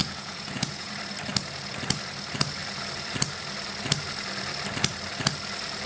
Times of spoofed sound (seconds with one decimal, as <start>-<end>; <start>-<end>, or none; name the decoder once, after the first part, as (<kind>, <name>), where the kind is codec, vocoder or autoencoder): 0.0-0.9 (vocoder, Vocos)